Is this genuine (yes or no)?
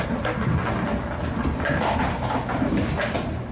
yes